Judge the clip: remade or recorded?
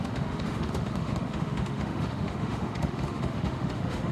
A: remade